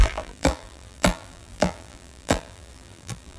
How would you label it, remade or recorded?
remade